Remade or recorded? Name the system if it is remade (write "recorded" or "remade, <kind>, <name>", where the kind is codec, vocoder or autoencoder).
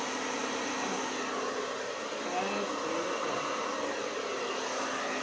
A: recorded